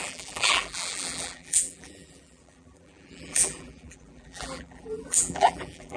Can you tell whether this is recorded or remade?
remade